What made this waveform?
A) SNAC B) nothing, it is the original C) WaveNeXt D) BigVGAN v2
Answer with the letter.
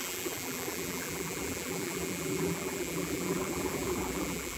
D